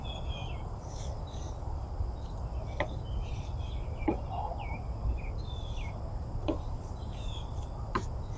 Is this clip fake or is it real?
real